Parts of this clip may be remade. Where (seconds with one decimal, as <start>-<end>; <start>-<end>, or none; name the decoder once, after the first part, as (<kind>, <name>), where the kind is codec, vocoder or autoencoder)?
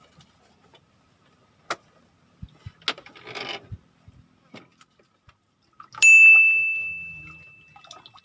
none